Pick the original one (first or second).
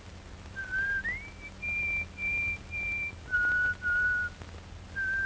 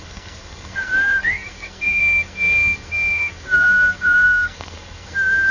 first